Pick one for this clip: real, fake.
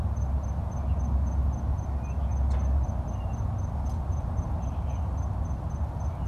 real